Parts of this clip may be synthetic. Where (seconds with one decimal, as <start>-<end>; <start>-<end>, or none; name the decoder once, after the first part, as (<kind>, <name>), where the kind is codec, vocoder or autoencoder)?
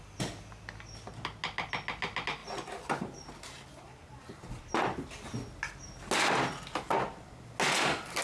2.4-3.3 (vocoder, BigVGAN v2)